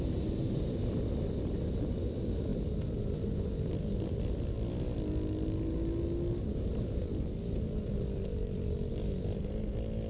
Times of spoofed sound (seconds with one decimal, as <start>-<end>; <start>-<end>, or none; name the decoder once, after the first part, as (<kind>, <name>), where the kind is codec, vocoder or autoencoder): none